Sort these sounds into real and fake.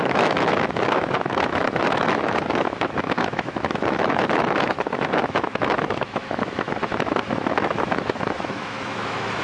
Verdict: fake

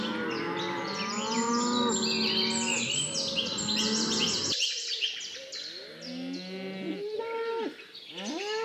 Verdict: real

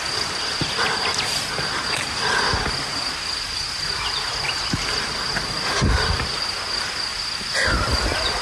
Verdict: real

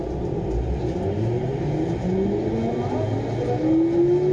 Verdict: real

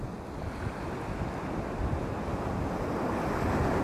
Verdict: real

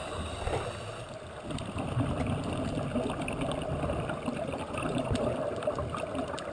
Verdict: fake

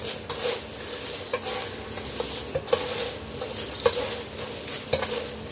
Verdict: real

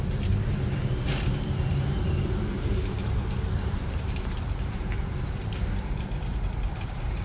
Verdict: fake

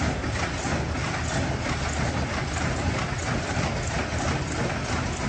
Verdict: real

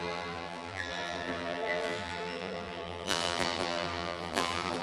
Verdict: fake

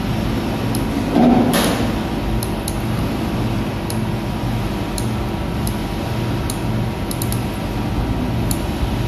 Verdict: real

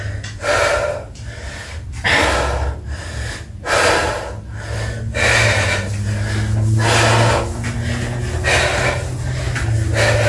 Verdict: real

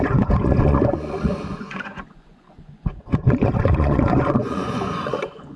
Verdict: fake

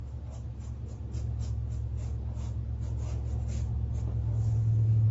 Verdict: real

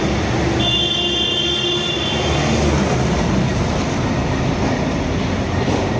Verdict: real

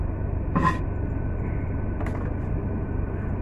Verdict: fake